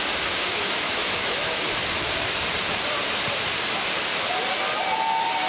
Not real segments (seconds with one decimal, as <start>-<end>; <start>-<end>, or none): 0.5-1.6

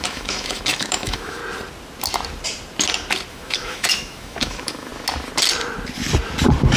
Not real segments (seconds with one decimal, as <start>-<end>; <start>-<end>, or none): 0.0-1.4; 3.3-4.9